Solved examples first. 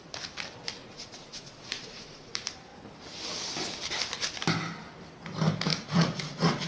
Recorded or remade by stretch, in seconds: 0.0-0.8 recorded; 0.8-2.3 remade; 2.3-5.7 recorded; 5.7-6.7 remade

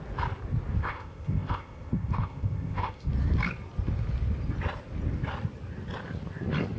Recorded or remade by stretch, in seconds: 0.0-0.8 recorded; 0.8-3.1 remade; 3.1-6.8 recorded

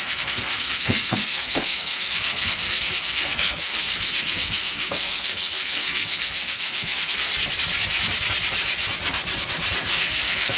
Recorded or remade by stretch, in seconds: 0.0-7.3 remade; 7.3-9.9 recorded; 9.9-10.6 remade

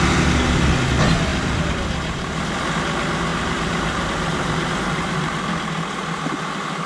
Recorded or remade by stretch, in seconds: 0.0-1.3 recorded; 1.3-2.3 remade; 2.3-3.3 recorded; 3.3-5.4 remade; 5.4-6.9 recorded

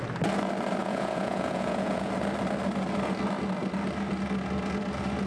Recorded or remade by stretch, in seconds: 0.0-0.8 recorded; 0.8-2.1 remade; 2.1-5.3 recorded

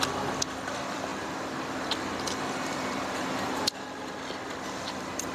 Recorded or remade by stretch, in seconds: 0.0-2.6 recorded; 2.6-4.2 remade; 4.2-5.3 recorded